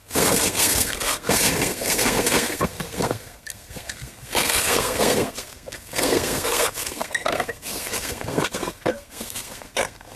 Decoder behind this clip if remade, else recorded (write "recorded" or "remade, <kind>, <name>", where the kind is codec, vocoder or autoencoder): remade, codec, SNAC